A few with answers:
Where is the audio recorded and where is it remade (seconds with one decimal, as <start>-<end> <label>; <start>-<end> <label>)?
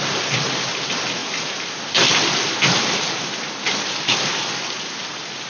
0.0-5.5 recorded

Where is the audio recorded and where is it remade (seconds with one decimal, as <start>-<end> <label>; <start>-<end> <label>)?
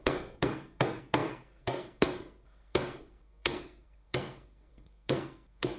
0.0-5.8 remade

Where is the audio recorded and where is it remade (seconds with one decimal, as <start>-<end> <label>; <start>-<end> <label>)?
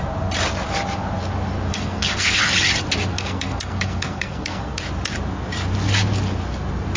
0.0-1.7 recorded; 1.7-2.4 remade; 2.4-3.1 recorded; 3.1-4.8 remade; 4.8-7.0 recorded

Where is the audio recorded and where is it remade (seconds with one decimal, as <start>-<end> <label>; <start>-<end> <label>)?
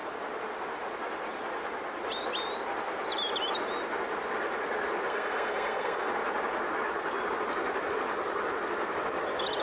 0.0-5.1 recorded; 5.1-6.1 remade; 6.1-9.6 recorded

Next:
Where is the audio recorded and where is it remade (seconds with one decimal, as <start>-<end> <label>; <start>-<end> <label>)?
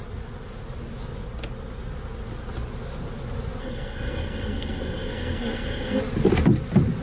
0.0-3.6 recorded; 3.6-6.0 remade; 6.0-7.0 recorded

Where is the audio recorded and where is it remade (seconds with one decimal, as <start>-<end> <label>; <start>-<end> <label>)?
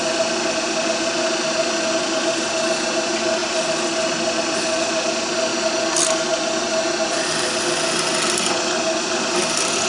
0.0-9.9 recorded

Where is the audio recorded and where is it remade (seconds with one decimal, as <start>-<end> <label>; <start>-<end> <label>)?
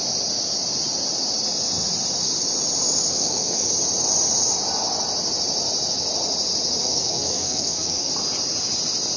0.0-3.1 recorded; 3.1-3.7 remade; 3.7-6.8 recorded; 6.8-8.1 remade; 8.1-9.2 recorded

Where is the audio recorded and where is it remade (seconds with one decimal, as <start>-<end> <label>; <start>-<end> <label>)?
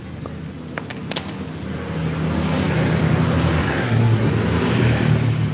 0.0-3.6 recorded; 3.6-4.3 remade; 4.3-5.5 recorded